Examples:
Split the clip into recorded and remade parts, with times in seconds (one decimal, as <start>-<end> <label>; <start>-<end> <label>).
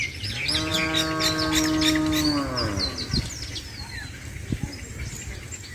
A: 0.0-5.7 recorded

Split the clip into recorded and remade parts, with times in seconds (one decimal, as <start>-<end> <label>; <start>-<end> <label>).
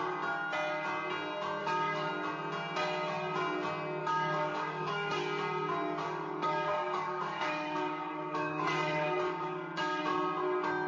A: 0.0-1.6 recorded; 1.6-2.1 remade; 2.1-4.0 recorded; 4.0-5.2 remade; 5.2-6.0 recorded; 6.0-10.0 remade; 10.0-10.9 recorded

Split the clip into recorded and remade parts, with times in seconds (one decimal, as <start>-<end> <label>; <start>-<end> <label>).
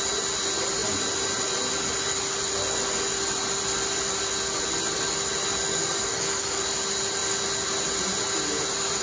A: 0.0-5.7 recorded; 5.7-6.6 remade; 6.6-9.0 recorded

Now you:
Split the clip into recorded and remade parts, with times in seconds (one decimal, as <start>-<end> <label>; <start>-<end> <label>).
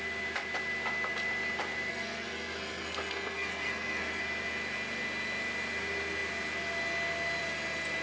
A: 0.0-1.9 recorded; 1.9-4.2 remade; 4.2-8.0 recorded